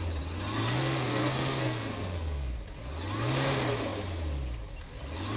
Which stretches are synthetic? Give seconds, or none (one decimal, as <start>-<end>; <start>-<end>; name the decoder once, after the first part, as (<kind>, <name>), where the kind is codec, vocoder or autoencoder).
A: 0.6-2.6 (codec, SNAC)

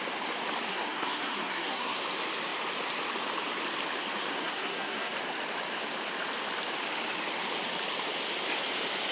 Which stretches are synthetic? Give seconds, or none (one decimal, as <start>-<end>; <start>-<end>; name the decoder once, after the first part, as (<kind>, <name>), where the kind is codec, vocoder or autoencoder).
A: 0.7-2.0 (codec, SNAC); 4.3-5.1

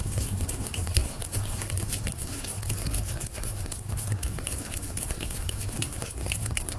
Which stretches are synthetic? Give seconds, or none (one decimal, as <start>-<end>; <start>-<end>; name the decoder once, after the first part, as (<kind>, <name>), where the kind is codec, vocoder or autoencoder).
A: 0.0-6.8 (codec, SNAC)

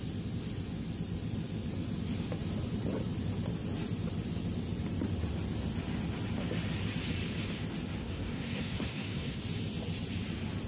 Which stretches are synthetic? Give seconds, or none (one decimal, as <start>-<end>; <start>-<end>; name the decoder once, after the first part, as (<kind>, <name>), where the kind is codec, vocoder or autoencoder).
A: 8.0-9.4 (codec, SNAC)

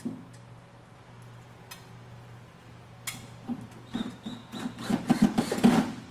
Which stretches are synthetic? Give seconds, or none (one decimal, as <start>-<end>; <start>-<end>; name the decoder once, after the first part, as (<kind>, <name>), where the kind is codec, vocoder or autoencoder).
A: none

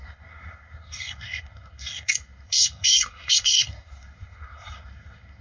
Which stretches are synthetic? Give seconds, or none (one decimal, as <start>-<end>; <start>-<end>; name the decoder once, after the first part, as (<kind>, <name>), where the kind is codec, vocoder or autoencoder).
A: 0.0-5.4 (codec, SNAC)